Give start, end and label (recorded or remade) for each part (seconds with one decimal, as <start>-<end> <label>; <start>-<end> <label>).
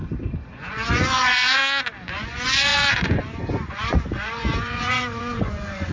0.0-0.5 recorded; 0.5-1.6 remade; 1.6-2.1 recorded; 2.1-5.9 remade